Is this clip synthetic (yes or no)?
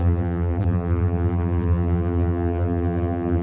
yes